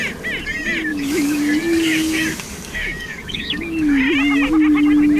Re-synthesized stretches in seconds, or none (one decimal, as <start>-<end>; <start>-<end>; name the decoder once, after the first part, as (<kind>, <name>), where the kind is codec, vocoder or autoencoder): 0.9-4.0 (codec, DAC)